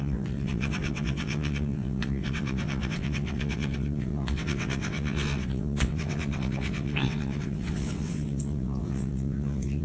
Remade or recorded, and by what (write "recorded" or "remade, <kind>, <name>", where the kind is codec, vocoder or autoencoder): remade, vocoder, WaveNeXt